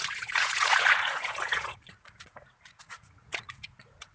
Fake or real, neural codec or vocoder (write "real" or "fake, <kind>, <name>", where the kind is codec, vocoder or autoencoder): fake, vocoder, Vocos